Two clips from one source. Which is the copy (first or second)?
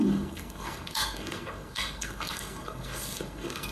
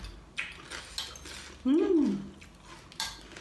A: first